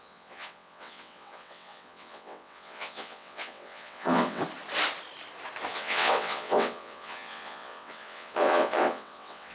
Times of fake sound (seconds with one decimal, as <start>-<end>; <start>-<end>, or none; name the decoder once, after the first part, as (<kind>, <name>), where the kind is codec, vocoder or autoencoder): 0.0-4.4 (vocoder, WaveNeXt); 5.7-9.5